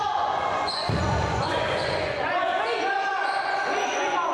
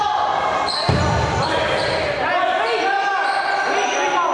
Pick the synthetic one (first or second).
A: first